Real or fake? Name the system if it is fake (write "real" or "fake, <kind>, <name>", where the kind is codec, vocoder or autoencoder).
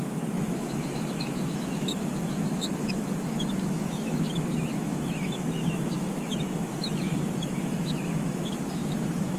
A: fake, autoencoder, DAC-VAE